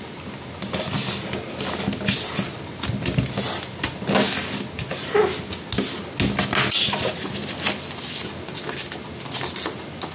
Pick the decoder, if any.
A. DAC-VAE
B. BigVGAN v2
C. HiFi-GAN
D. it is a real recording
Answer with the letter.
D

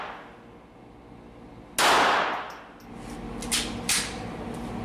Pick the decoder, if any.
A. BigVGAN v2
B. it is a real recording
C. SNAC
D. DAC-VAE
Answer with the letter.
B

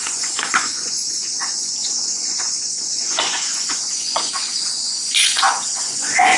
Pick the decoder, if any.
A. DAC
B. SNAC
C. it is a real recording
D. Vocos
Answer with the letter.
D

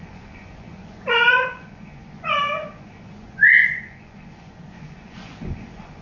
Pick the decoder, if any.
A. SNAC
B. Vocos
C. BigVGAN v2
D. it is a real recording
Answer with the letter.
B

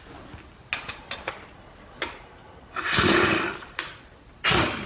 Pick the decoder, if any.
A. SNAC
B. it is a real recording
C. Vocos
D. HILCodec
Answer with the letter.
B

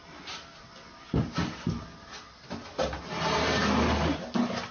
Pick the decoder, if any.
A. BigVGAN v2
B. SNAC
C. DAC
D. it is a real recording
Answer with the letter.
D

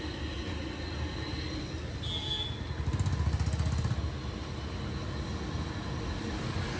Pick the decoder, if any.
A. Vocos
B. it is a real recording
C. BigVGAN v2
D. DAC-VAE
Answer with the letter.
B